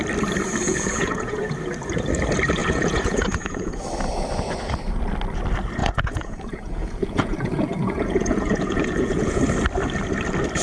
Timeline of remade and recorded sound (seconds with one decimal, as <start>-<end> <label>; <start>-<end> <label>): 0.0-0.6 recorded; 0.6-1.4 remade; 1.4-2.6 recorded; 2.6-3.8 remade; 3.8-5.8 recorded; 5.8-9.4 remade; 9.4-10.6 recorded